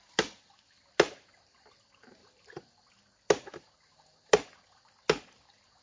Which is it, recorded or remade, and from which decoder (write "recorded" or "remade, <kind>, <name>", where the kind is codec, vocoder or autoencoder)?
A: recorded